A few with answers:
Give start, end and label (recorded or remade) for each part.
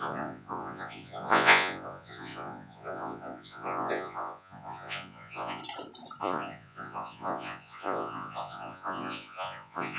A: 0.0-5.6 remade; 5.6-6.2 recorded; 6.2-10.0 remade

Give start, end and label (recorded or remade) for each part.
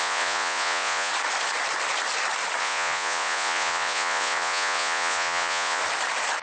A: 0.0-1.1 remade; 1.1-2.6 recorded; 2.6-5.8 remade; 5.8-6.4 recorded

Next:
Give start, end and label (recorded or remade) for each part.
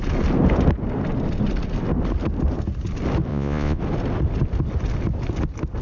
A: 0.0-3.3 recorded; 3.3-3.8 remade; 3.8-5.8 recorded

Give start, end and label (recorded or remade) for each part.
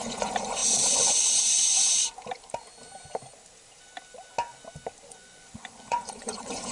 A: 0.0-2.0 remade; 2.0-5.1 recorded; 5.1-6.7 remade